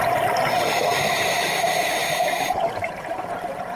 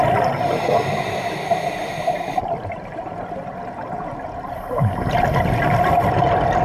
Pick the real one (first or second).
second